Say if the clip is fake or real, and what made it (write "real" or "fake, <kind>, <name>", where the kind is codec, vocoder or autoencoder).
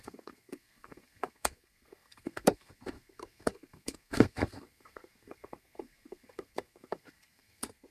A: fake, codec, SNAC